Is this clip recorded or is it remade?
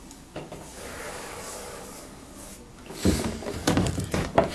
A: remade